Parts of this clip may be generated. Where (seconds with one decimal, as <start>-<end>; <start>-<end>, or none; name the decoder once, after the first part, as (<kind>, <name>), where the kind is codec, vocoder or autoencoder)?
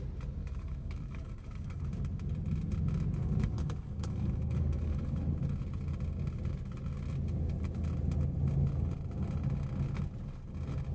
0.4-1.9 (codec, DAC); 3.2-5.2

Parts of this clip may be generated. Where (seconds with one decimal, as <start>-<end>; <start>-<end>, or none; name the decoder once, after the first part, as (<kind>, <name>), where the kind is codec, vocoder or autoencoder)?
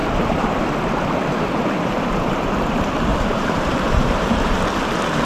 0.0-0.6 (vocoder, BigVGAN v2); 3.1-4.6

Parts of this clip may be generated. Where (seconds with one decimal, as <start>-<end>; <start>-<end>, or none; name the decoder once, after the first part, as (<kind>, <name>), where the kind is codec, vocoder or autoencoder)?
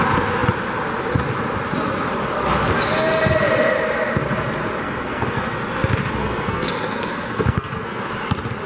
4.8-5.5 (codec, SNAC); 6.2-8.1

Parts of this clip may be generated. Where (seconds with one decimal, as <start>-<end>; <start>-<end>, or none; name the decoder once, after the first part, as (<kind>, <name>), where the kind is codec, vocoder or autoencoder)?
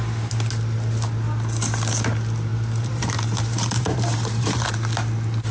2.5-4.7 (vocoder, BigVGAN v2)